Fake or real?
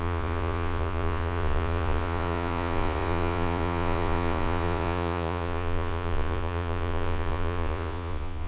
fake